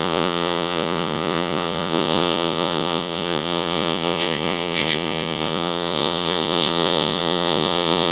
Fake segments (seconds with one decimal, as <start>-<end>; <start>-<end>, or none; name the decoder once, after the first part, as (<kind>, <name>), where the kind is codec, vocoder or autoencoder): 0.0-8.1 (vocoder, Vocos)